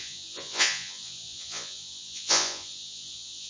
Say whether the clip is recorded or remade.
remade